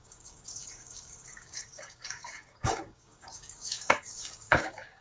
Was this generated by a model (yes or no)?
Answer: yes